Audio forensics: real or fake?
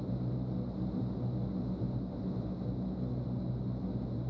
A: real